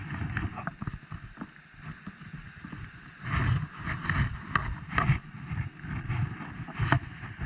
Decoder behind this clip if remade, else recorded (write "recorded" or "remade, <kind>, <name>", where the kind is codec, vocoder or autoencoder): recorded